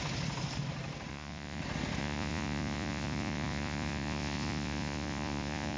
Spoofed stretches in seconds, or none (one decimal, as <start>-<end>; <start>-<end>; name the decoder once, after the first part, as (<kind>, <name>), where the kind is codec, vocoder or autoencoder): 1.1-1.6 (vocoder, Vocos); 2.0-5.8